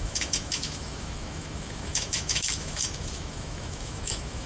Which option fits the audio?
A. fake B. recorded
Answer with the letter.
A